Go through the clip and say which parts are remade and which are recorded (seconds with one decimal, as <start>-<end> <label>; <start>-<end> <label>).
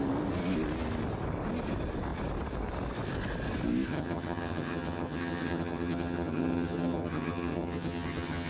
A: 0.0-3.9 recorded; 3.9-8.5 remade